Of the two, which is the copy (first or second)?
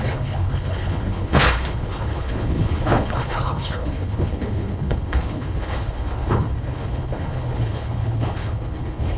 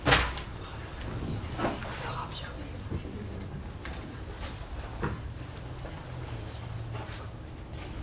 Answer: first